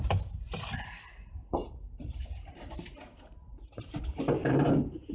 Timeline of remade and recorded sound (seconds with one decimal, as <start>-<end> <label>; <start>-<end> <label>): 0.0-1.6 recorded; 1.6-4.0 remade; 4.0-4.4 recorded; 4.4-5.1 remade